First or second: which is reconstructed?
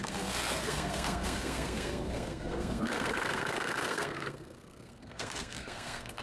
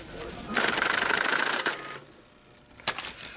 first